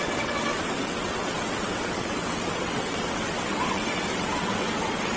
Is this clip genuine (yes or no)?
no